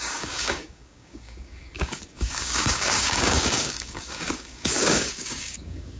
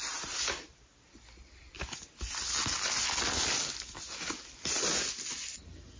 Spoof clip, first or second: first